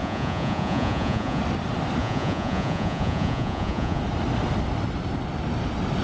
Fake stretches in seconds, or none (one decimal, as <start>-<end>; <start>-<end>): 0.0-1.4; 2.0-4.0